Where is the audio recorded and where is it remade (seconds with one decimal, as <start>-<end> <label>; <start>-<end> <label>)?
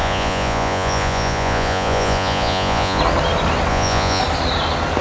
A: 0.0-3.0 remade; 3.0-3.7 recorded; 3.7-4.2 remade; 4.2-5.0 recorded